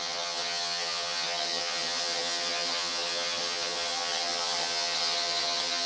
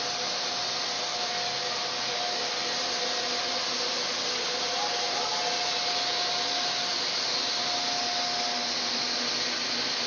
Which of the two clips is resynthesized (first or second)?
first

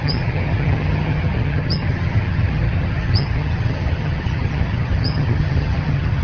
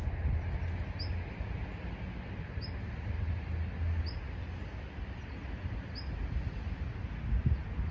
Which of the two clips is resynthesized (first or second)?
first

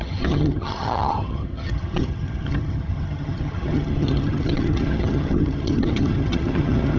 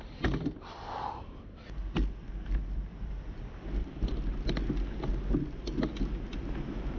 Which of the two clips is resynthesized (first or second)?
first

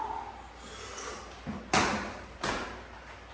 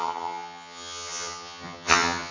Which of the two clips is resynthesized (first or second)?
second